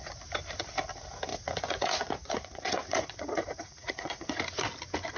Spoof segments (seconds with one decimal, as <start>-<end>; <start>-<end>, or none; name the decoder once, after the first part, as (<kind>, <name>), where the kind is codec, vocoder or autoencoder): 1.3-4.4 (vocoder, Vocos)